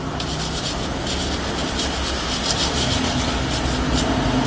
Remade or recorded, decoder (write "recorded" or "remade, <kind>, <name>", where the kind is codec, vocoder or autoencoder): recorded